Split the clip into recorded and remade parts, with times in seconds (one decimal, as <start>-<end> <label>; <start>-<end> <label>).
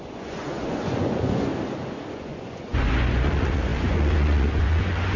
0.0-1.5 remade; 1.5-2.1 recorded; 2.1-5.2 remade